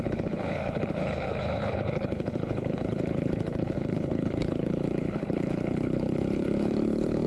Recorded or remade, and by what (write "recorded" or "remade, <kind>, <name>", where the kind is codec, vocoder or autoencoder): remade, codec, HILCodec